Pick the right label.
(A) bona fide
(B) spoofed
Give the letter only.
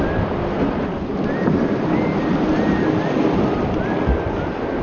A